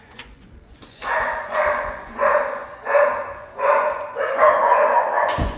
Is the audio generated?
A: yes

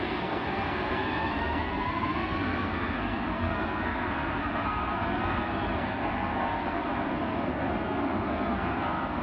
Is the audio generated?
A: yes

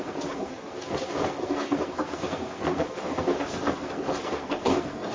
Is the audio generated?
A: yes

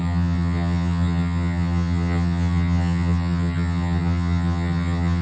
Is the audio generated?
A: yes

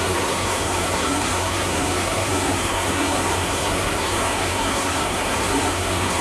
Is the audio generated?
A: yes